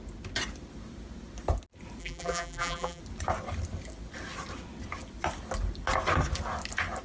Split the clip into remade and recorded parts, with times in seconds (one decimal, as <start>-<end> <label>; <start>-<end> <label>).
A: 0.0-2.0 recorded; 2.0-3.0 remade; 3.0-7.0 recorded